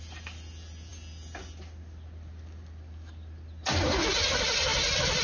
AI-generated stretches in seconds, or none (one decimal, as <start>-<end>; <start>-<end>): none